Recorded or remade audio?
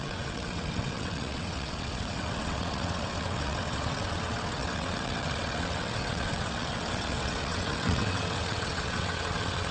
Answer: remade